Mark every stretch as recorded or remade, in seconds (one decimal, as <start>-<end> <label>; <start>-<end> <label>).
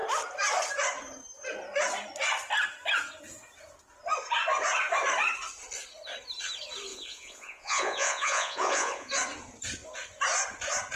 0.0-6.9 recorded; 6.9-9.1 remade; 9.1-11.0 recorded